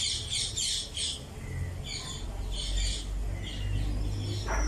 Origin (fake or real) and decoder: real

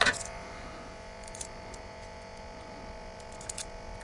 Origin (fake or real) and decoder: fake, vocoder, Vocos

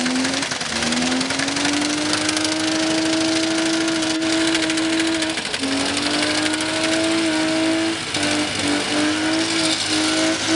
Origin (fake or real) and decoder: real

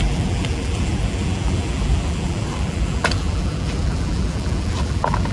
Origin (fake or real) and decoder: fake, vocoder, BigVGAN v2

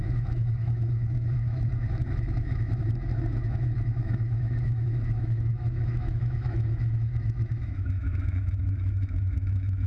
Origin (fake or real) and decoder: fake, autoencoder, DAC-VAE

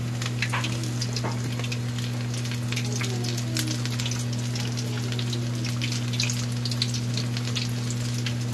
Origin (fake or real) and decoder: real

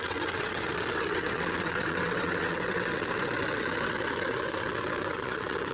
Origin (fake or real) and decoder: fake, vocoder, WaveNeXt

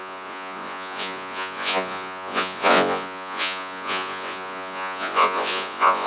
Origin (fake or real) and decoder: fake, vocoder, Vocos